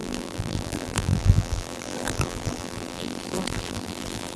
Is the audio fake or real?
fake